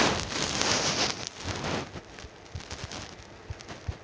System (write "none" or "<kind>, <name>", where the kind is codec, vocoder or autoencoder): none